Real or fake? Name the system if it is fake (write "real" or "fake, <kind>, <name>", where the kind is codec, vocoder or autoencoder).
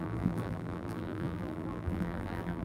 fake, vocoder, BigVGAN v2